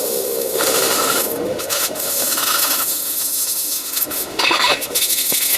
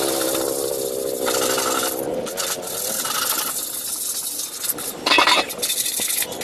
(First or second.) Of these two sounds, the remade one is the first